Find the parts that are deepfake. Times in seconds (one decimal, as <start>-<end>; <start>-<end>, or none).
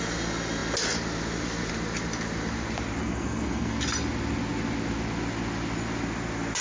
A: 3.0-3.8